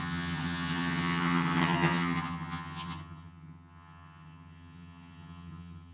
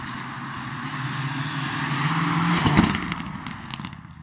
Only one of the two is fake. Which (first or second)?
first